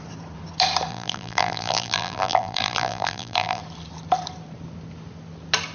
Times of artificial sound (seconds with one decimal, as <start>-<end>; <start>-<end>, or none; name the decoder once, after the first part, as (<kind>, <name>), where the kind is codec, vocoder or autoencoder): 0.9-3.6 (vocoder, BigVGAN v2)